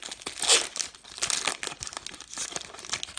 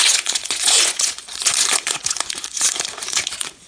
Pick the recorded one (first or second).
first